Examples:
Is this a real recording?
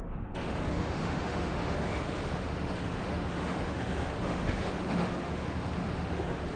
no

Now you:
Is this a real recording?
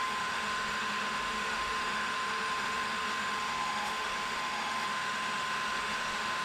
no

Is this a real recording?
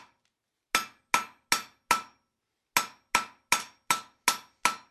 yes